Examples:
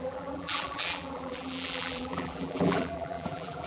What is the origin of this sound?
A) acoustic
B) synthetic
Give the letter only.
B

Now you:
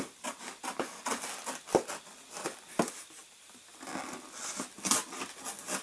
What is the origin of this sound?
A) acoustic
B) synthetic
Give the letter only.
A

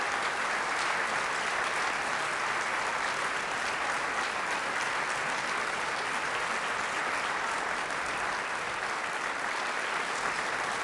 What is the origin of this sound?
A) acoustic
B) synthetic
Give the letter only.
A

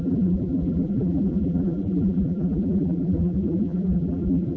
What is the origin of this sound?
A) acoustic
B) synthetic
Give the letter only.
B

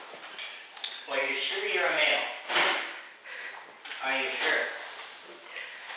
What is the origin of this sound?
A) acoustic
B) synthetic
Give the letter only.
A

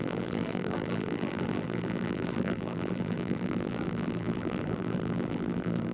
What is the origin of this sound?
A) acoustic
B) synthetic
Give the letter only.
B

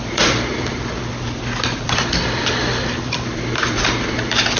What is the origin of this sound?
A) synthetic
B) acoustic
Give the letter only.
A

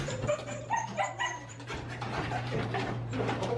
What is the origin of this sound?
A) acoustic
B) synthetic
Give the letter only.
B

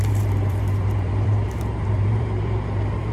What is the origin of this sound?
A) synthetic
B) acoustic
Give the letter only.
A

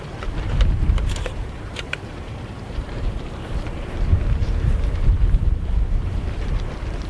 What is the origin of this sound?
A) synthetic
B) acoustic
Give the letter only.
A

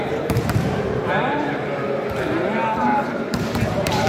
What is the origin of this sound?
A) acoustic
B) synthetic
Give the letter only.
B